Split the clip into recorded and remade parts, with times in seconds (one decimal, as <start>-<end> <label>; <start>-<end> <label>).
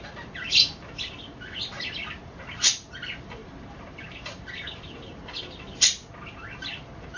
0.0-7.2 recorded